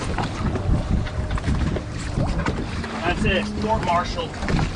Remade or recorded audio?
recorded